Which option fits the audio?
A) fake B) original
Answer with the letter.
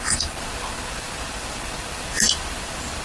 B